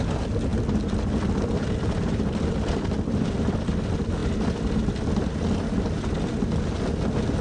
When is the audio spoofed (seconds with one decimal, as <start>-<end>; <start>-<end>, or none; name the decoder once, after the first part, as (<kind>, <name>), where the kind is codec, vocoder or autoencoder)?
none

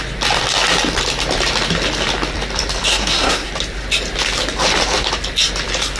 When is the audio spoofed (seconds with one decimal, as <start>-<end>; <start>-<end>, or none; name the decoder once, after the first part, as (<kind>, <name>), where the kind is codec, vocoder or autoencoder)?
2.9-3.5 (codec, SNAC)

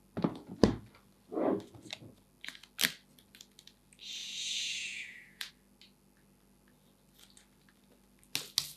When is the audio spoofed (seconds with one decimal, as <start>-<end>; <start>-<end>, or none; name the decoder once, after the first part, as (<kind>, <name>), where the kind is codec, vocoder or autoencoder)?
4.2-5.5 (vocoder, Vocos)